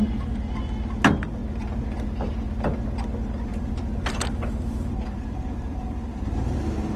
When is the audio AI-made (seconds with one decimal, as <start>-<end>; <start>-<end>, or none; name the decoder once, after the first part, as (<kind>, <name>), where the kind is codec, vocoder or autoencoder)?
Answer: 3.5-7.0 (vocoder, BigVGAN v2)